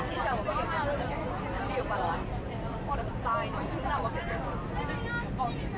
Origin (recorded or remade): recorded